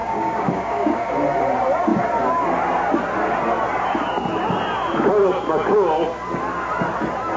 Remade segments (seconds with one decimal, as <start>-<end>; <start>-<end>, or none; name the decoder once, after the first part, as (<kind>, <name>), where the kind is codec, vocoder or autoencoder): 0.0-1.1 (codec, DAC)